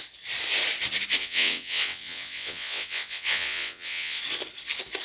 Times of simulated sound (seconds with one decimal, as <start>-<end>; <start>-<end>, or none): 1.2-4.2